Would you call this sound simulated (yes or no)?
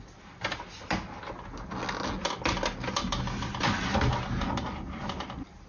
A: no